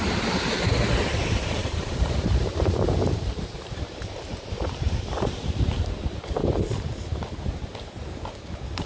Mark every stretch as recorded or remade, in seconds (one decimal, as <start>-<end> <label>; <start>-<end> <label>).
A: 0.0-1.6 recorded; 1.6-5.7 remade; 5.7-8.9 recorded